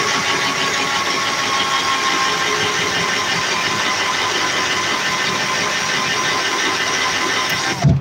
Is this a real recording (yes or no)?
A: yes